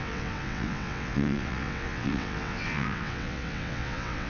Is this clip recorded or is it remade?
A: remade